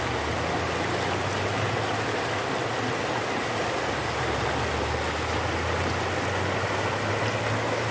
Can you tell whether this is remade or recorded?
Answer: recorded